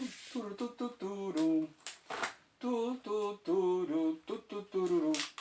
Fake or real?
real